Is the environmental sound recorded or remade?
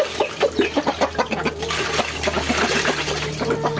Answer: recorded